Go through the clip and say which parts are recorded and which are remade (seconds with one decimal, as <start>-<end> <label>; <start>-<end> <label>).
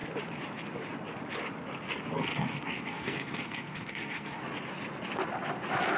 0.0-2.2 recorded; 2.2-4.4 remade; 4.4-6.0 recorded